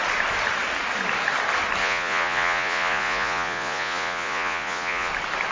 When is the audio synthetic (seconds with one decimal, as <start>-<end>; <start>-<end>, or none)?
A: 1.8-5.1